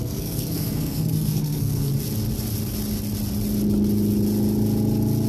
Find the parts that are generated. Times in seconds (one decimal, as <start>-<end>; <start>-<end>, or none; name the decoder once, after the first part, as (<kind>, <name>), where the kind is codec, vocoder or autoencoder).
0.0-1.9 (codec, SNAC)